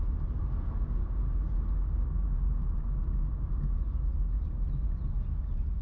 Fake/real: real